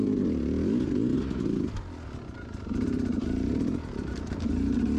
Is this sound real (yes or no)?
yes